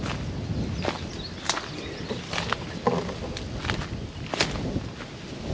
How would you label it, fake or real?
real